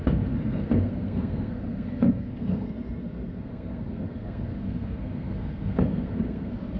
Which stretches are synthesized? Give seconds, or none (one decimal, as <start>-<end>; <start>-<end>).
0.0-6.8